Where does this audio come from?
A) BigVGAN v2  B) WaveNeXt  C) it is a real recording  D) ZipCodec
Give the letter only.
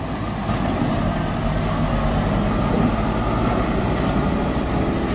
C